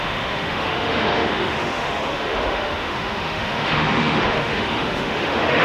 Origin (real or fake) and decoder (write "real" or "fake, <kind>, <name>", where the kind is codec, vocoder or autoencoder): fake, autoencoder, DAC-VAE